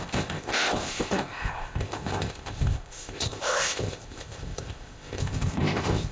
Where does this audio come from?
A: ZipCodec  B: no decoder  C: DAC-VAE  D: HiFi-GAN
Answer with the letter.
A